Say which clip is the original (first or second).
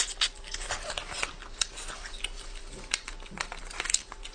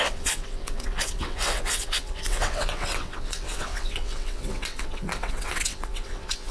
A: first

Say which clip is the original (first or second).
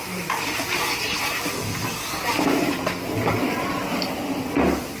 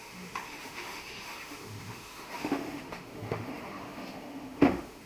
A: first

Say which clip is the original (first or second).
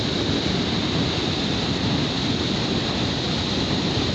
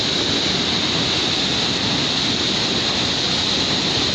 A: second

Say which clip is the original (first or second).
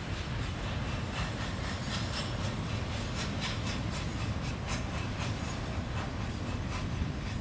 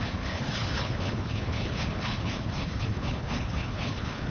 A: first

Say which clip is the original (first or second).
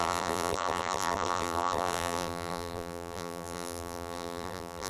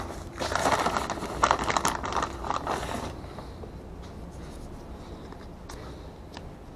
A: second